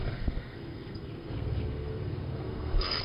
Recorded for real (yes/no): no